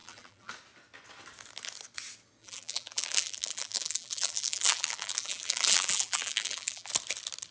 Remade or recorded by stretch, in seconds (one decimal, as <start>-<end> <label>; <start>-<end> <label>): 0.0-0.5 remade; 0.5-2.4 recorded; 2.4-6.9 remade; 6.9-7.5 recorded